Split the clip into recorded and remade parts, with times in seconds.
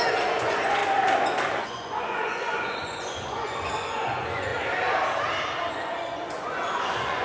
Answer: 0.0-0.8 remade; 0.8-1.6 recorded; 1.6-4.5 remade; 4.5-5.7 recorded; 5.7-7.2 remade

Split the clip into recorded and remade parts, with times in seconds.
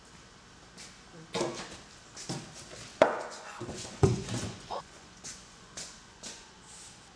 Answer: 0.0-2.9 recorded; 2.9-6.6 remade; 6.6-7.2 recorded